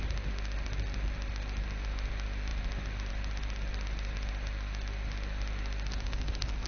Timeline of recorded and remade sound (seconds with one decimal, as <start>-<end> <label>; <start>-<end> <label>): 0.0-6.7 recorded